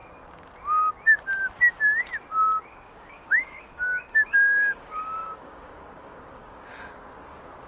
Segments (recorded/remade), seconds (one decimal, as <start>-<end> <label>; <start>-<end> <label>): 0.0-2.7 recorded; 2.7-6.9 remade; 6.9-7.7 recorded